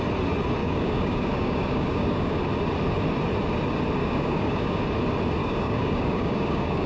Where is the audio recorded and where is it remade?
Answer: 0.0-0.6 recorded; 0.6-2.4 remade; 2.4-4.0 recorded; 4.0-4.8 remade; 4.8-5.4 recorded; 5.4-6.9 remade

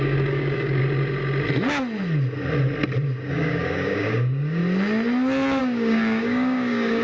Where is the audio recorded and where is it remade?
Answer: 0.0-0.8 remade; 0.8-3.3 recorded; 3.3-4.6 remade; 4.6-5.6 recorded; 5.6-7.0 remade